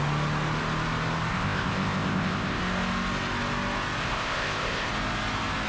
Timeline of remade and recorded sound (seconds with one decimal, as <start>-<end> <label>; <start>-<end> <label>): 0.0-1.3 recorded; 1.3-2.6 remade; 2.6-4.0 recorded; 4.0-4.9 remade; 4.9-5.7 recorded